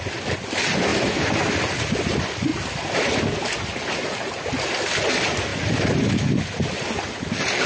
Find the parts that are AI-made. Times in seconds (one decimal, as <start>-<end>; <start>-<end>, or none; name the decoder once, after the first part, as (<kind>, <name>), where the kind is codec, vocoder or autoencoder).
none